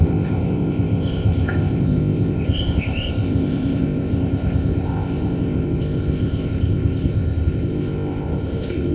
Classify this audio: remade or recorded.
remade